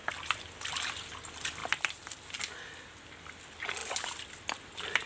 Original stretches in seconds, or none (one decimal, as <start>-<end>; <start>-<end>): 0.0-5.1